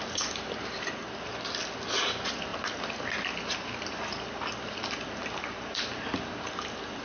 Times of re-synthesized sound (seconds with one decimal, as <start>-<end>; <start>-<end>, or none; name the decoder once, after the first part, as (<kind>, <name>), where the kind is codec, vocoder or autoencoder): none